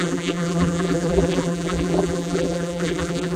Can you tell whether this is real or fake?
fake